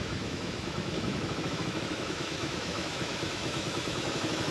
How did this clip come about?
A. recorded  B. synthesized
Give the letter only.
B